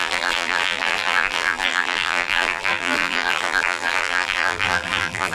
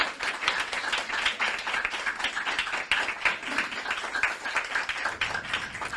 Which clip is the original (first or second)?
second